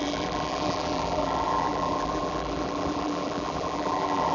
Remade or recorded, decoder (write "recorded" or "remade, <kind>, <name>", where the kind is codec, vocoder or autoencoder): remade, vocoder, BigVGAN v2